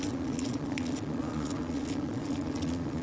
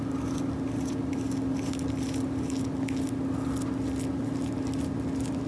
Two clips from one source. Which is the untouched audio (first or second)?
second